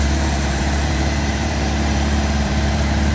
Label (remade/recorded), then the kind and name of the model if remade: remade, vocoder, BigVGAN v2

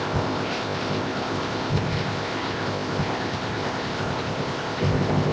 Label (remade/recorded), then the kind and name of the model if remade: remade, codec, ZipCodec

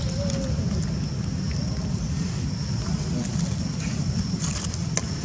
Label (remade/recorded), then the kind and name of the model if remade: recorded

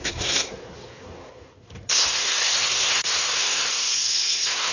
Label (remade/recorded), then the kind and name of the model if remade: remade, codec, SNAC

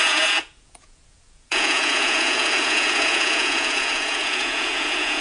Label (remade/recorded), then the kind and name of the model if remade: remade, vocoder, Vocos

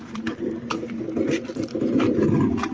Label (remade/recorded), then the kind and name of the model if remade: recorded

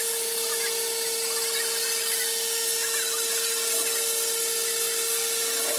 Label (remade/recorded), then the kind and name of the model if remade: recorded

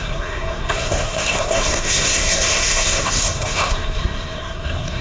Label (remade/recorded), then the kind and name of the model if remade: remade, codec, SNAC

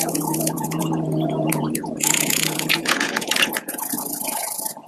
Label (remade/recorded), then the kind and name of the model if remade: remade, vocoder, Vocos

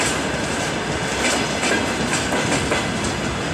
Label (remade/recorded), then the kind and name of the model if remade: recorded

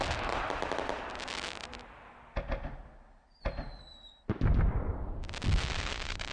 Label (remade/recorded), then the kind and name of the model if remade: recorded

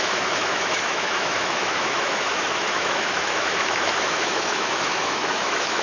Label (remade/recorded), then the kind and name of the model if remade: remade, autoencoder, DAC-VAE